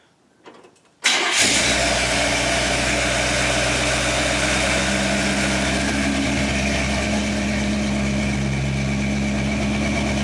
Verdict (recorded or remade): recorded